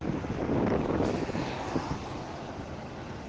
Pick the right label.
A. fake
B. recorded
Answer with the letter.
B